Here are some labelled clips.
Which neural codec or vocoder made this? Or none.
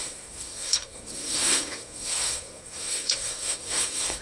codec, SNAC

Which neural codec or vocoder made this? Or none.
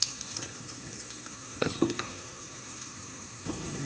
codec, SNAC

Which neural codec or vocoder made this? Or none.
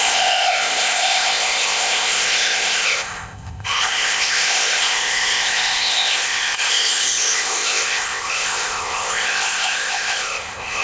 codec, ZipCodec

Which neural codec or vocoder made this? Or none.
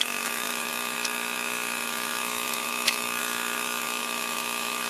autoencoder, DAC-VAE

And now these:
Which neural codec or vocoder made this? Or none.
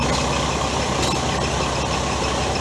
none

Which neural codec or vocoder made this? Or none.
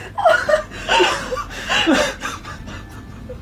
none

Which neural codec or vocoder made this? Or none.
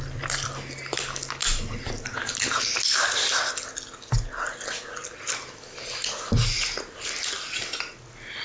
none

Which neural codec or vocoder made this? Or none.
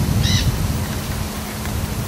none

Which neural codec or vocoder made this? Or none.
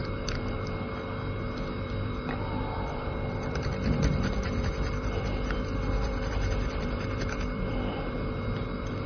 vocoder, BigVGAN v2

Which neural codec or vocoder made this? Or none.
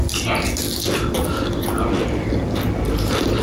none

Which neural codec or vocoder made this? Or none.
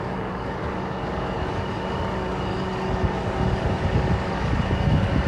codec, DAC